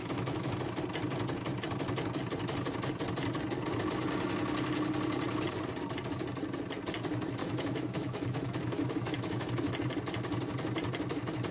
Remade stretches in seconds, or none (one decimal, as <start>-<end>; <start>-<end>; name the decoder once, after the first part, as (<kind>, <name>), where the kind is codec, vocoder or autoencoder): 0.0-0.6 (autoencoder, DAC-VAE); 7.4-9.7